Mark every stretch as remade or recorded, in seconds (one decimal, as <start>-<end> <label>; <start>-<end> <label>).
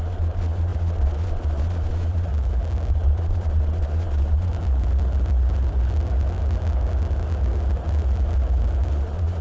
0.0-2.3 remade; 2.3-2.9 recorded; 2.9-4.5 remade; 4.5-8.9 recorded; 8.9-9.4 remade